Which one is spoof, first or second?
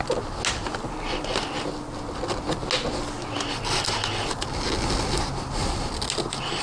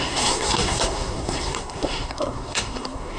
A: second